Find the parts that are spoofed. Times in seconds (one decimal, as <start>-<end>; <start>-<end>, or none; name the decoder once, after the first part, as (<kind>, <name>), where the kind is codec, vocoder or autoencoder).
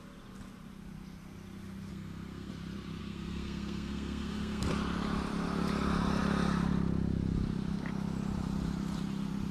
1.9-2.5 (codec, SNAC); 3.0-4.6